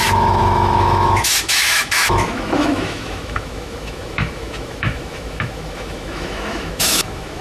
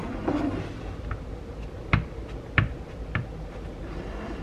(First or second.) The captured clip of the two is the second